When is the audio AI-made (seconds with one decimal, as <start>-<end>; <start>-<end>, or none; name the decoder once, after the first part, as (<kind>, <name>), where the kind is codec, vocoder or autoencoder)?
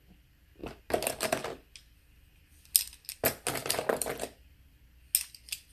3.6-4.8 (vocoder, BigVGAN v2)